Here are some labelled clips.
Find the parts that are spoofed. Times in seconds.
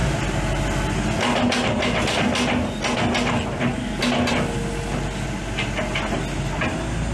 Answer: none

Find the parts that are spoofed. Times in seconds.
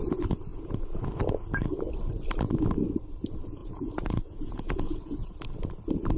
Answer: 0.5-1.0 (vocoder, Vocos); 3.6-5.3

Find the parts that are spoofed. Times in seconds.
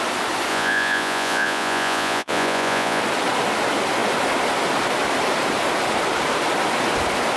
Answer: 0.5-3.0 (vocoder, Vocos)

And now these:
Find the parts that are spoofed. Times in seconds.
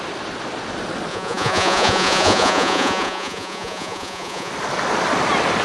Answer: 1.1-4.5 (vocoder, Vocos)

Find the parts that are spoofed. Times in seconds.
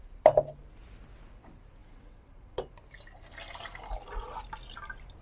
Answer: 1.8-2.7 (vocoder, WaveNeXt)